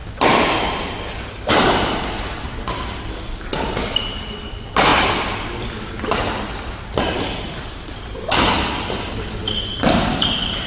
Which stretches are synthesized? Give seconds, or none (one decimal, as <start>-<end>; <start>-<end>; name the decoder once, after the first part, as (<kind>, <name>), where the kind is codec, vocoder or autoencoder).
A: none